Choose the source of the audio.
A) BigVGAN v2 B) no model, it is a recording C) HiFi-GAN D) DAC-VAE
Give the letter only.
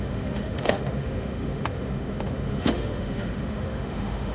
D